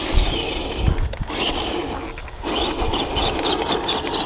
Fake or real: real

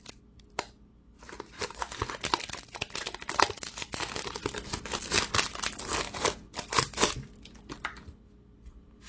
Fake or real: real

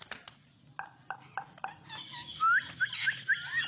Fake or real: real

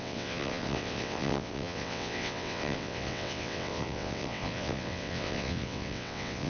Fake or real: fake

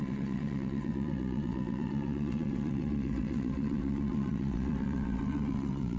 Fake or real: fake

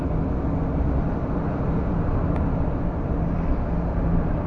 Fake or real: real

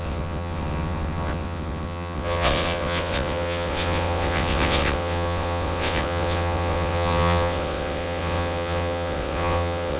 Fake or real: fake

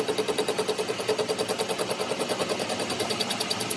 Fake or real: real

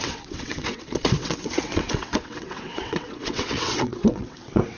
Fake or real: fake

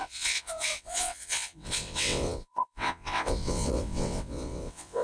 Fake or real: fake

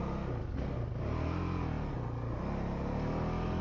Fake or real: real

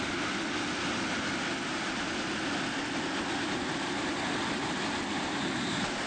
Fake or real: real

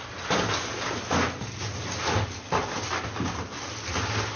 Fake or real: real